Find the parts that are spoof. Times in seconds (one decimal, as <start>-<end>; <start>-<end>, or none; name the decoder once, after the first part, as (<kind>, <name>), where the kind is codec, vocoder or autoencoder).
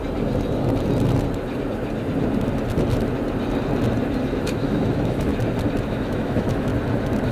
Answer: 4.4-5.3 (autoencoder, DAC-VAE); 5.9-6.7